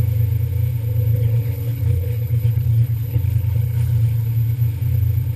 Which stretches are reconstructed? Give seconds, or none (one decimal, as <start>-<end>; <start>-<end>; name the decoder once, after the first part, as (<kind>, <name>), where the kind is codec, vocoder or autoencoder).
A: 1.1-4.3 (codec, HILCodec)